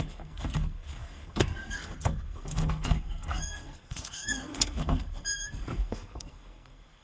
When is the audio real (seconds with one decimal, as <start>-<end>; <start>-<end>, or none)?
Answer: none